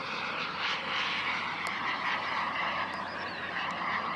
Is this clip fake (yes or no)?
yes